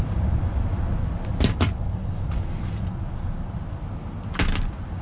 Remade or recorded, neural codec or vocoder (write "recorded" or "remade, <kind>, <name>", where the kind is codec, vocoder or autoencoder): recorded